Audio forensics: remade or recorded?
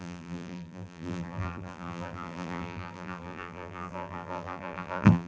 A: remade